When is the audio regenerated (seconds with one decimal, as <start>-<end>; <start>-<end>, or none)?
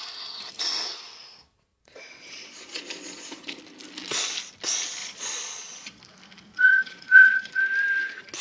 1.7-3.6; 5.0-6.0; 6.5-7.6